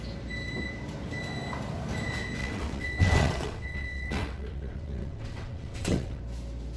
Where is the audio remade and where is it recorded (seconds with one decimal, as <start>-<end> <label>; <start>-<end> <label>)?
0.0-2.4 recorded; 2.4-6.2 remade; 6.2-6.8 recorded